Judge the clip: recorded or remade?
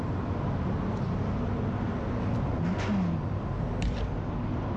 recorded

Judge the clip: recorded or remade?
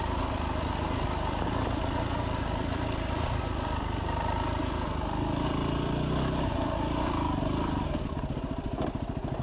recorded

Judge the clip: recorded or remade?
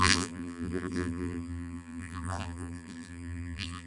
remade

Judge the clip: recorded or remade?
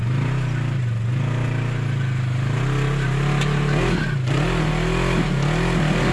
recorded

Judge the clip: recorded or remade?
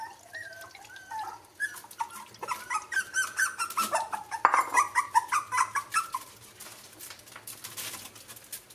recorded